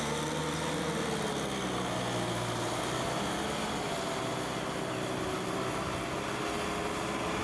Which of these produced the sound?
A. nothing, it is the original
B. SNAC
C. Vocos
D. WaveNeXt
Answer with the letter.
A